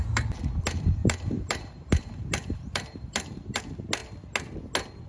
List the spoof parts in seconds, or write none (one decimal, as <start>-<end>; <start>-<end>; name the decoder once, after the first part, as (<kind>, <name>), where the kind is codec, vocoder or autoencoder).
1.0-3.6 (vocoder, BigVGAN v2)